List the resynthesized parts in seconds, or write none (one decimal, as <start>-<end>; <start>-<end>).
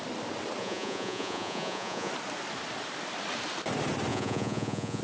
0.6-2.1; 4.1-5.0